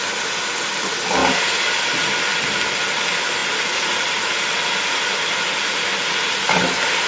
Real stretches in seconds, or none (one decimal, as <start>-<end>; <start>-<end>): 0.0-7.1